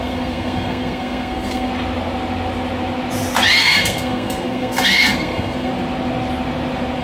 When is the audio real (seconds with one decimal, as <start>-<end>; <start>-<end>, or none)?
1.7-3.6; 5.7-7.0